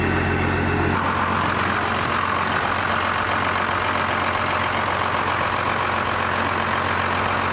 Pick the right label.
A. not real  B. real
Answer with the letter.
B